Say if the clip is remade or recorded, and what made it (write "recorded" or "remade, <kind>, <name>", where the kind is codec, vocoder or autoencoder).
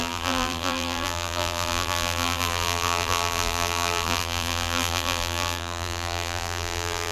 remade, vocoder, BigVGAN v2